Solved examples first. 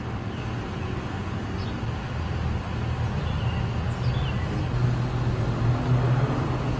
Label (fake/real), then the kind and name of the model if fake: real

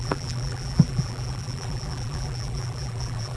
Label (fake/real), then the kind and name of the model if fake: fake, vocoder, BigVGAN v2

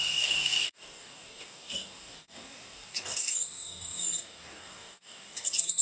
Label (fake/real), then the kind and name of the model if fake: fake, codec, DAC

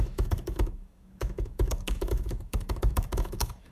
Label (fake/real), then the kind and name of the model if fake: fake, autoencoder, DAC-VAE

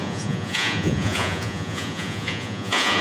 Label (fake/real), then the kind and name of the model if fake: fake, vocoder, Vocos